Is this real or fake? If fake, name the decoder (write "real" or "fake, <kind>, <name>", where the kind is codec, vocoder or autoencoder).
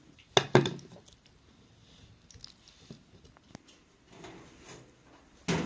real